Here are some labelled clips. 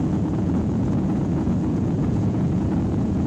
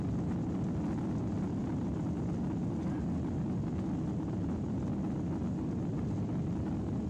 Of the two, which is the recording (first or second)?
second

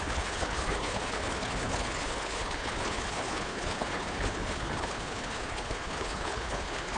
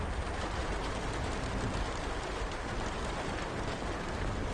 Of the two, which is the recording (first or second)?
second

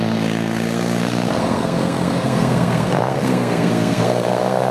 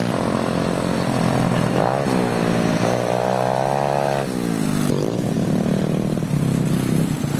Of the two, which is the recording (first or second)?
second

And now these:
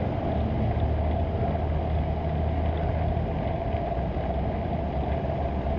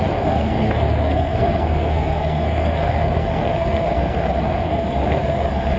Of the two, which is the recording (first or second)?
first